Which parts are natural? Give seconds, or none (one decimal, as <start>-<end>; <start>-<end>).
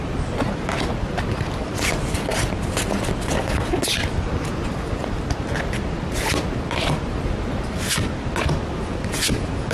0.0-9.7